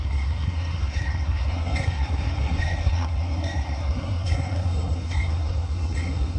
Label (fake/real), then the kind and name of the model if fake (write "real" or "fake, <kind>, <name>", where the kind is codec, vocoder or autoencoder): fake, codec, SNAC